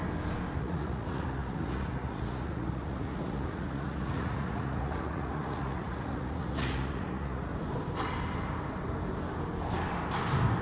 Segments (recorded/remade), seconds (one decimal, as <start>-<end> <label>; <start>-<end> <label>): 0.0-0.6 recorded; 0.6-7.5 remade; 7.5-10.6 recorded